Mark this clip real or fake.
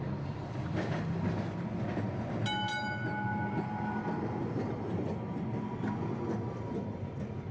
real